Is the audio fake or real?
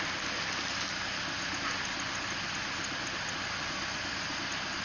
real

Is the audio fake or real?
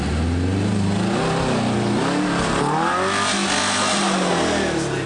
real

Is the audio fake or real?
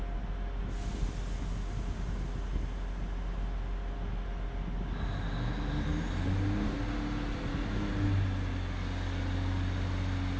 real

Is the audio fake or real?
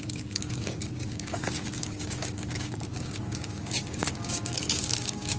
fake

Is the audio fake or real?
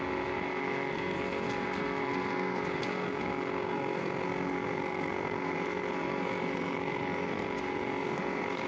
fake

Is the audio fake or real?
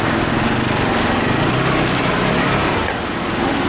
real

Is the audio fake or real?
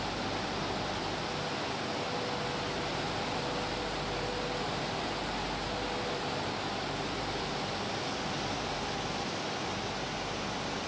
real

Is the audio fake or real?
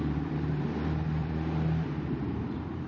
fake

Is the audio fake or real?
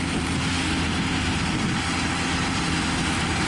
real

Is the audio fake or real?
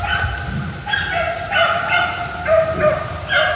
real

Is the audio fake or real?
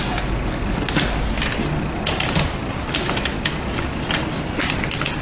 real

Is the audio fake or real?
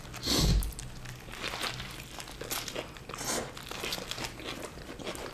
real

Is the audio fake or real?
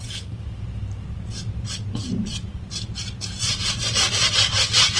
real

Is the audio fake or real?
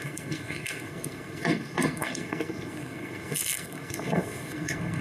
fake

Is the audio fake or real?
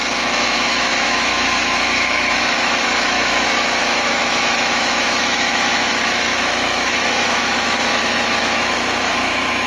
fake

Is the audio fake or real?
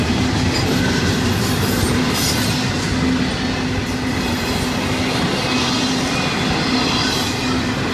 real